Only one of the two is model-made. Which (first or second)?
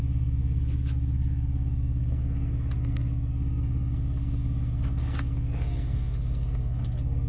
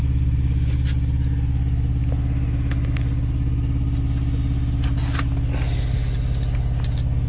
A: first